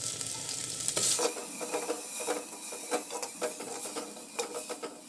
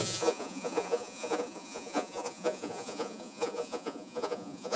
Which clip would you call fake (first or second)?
second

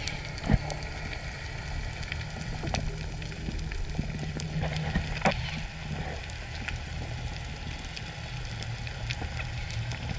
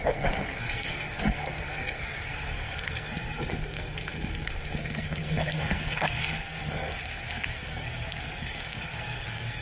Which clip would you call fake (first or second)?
second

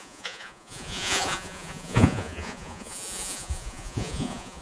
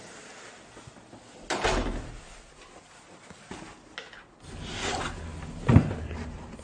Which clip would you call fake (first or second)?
first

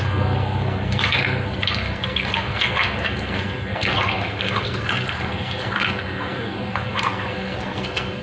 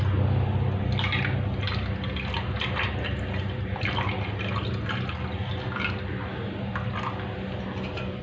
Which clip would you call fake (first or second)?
first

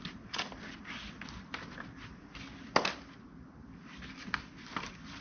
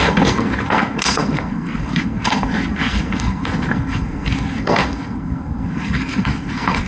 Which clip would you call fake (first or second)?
second